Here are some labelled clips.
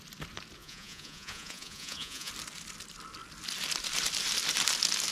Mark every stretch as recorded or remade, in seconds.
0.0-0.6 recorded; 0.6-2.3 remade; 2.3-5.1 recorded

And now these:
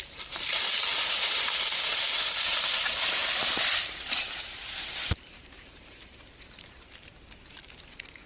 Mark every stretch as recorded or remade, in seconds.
0.0-8.3 remade